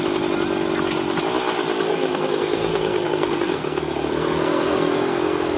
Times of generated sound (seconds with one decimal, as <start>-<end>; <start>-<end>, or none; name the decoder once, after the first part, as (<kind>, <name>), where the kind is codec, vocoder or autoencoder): 1.9-5.6 (codec, SNAC)